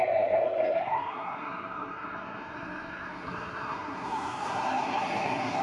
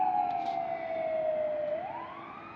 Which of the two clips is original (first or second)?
second